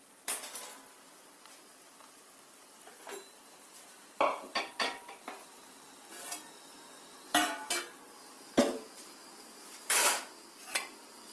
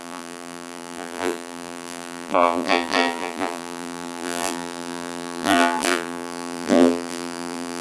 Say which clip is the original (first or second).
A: first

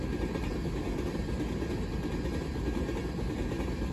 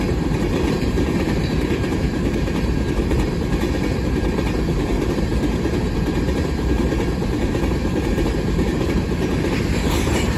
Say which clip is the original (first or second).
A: first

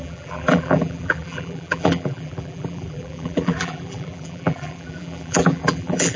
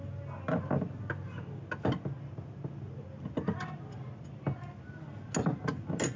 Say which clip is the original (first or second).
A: second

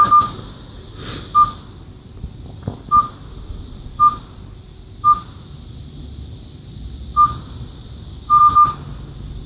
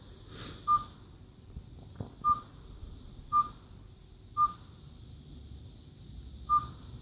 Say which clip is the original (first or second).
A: first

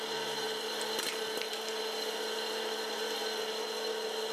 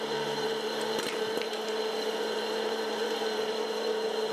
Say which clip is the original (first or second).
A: first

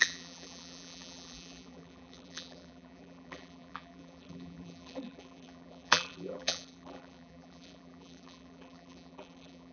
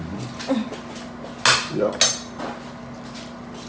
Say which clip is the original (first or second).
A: second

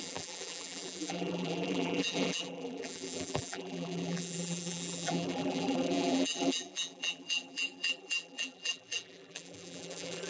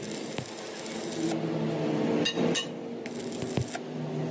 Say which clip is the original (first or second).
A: second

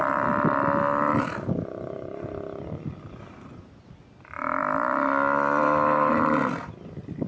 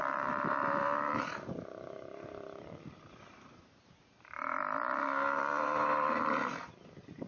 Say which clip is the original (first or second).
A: first